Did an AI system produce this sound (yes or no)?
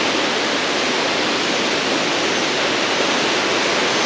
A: no